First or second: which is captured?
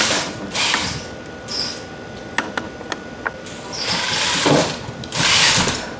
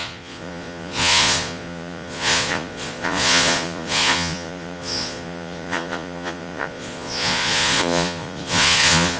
first